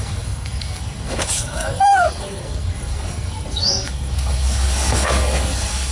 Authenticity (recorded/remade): remade